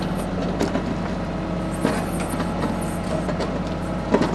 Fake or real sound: real